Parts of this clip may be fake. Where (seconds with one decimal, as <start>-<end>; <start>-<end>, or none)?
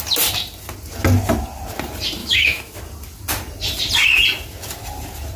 2.2-2.8